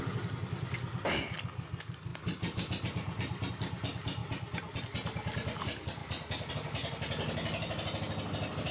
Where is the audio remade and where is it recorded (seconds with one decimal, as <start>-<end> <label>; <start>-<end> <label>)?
0.0-8.7 recorded